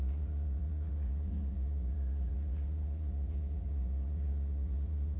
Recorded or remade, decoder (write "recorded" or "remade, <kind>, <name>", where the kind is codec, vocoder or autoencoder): remade, vocoder, Vocos